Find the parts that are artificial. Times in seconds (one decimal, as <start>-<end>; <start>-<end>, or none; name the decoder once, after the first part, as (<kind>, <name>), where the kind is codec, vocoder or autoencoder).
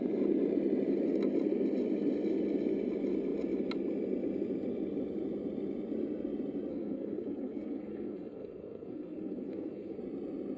6.7-10.0 (codec, SNAC)